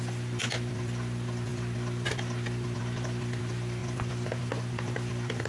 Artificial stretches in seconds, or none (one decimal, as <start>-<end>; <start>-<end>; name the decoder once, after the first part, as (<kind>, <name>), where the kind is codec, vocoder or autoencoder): none